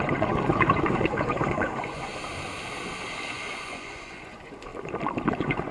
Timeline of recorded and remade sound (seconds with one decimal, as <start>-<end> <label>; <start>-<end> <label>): 0.0-2.1 remade; 2.1-3.3 recorded; 3.3-4.7 remade; 4.7-5.3 recorded; 5.3-5.7 remade